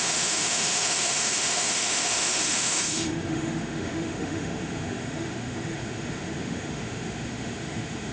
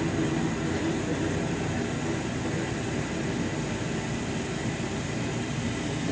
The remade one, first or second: first